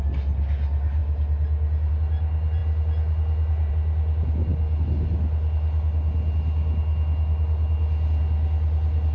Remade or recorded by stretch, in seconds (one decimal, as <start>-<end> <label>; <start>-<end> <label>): 0.0-9.1 recorded